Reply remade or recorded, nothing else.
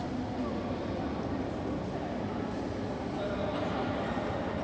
recorded